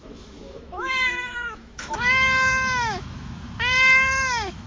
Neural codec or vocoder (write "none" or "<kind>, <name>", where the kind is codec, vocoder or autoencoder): autoencoder, DAC-VAE